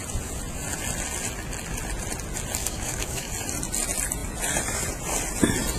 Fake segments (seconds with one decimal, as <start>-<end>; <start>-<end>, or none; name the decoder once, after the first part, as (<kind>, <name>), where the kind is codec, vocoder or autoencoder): 2.6-3.3 (codec, DAC)